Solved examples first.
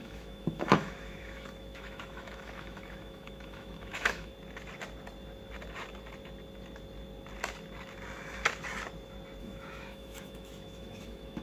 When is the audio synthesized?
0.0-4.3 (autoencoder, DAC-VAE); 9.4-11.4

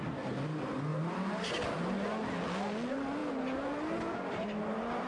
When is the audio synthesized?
none

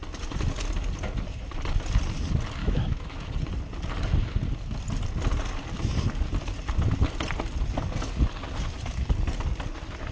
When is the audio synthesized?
2.6-3.2 (autoencoder, DAC-VAE)